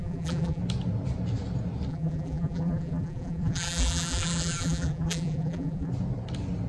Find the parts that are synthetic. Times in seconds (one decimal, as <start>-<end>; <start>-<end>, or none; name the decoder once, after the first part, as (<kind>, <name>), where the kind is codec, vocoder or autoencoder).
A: 0.0-0.6 (vocoder, BigVGAN v2); 1.9-5.9